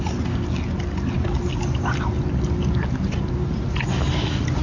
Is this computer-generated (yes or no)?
no